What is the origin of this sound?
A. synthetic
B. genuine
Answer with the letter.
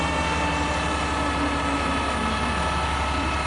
B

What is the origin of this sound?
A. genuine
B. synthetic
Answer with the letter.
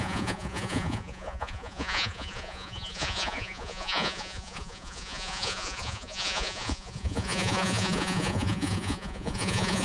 B